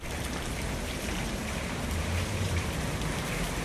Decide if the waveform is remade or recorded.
remade